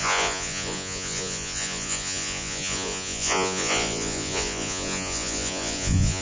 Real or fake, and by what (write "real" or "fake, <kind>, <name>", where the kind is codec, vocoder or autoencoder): fake, vocoder, Vocos